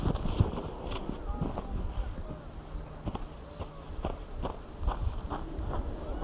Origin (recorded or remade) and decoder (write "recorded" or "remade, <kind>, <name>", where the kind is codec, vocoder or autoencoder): recorded